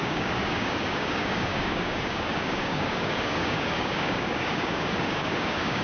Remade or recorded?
remade